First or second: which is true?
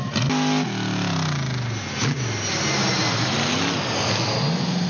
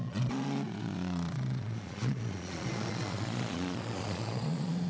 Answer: first